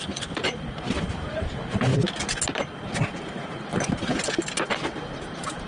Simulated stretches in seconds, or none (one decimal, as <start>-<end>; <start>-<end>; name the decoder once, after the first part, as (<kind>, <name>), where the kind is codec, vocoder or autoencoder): 0.0-1.9 (vocoder, BigVGAN v2); 5.3-5.7

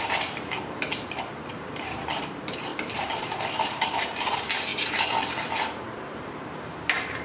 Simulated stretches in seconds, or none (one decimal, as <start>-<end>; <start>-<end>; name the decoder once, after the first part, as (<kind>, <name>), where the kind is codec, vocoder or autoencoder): 0.0-7.2 (vocoder, BigVGAN v2)

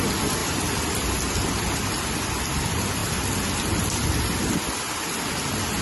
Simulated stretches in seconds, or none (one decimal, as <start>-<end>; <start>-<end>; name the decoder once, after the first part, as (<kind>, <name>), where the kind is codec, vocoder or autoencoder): none